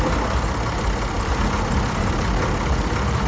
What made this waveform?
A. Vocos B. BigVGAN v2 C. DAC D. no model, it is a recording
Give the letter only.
D